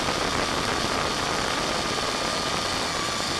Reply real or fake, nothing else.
real